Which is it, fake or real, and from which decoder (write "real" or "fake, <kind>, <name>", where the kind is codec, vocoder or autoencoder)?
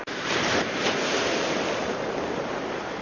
real